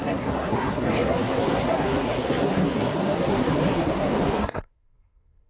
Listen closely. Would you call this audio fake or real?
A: fake